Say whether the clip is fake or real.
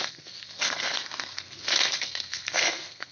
fake